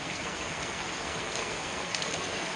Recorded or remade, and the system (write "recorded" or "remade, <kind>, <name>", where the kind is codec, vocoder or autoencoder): remade, codec, SNAC